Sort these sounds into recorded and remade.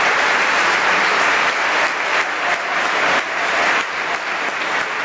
recorded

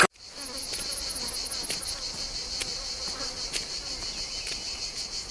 recorded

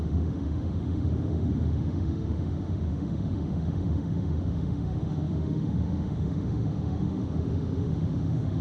remade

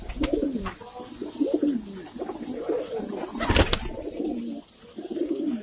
recorded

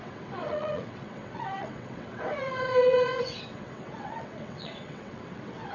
remade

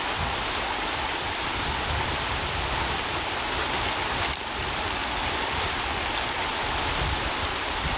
remade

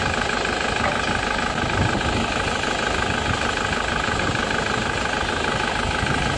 recorded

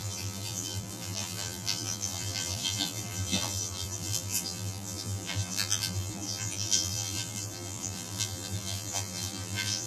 remade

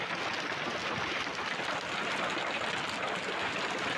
recorded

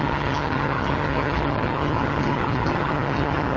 remade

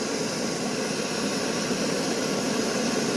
recorded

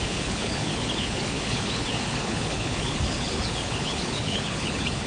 remade